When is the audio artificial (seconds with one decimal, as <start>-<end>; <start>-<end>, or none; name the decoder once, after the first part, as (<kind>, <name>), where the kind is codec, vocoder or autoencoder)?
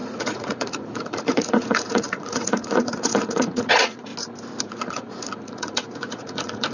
0.0-4.1 (vocoder, Vocos); 4.6-6.7